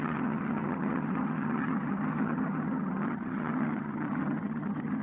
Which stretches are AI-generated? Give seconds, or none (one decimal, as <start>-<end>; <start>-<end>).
0.0-5.0